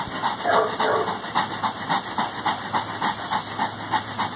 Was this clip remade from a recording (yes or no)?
no